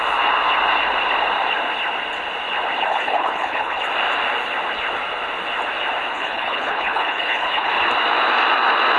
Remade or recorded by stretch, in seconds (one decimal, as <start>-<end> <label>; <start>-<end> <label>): 0.0-2.9 recorded; 2.9-3.8 remade; 3.8-6.1 recorded; 6.1-7.7 remade; 7.7-9.0 recorded